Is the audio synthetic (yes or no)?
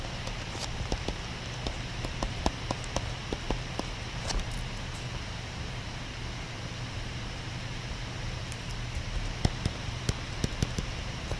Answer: yes